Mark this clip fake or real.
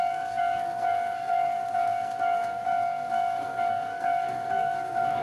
fake